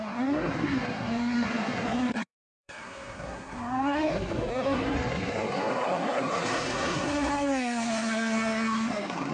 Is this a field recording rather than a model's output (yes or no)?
no